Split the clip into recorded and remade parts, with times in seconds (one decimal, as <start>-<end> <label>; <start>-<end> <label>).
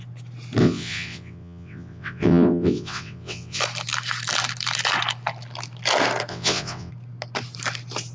0.0-0.6 recorded; 0.6-3.6 remade; 3.6-6.3 recorded; 6.3-6.9 remade; 6.9-8.1 recorded